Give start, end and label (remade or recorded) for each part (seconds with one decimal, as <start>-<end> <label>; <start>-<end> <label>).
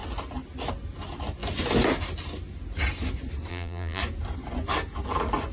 0.0-3.5 recorded; 3.5-4.0 remade; 4.0-5.5 recorded